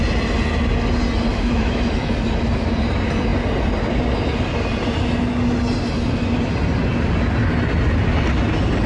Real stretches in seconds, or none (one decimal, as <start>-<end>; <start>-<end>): 0.0-1.3; 2.1-8.9